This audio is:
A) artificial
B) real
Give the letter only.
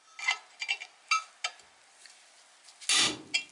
B